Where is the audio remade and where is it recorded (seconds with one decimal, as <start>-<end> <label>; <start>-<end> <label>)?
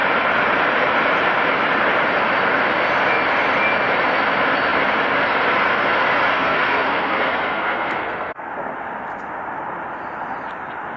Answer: 0.0-6.3 recorded; 6.3-8.5 remade; 8.5-11.0 recorded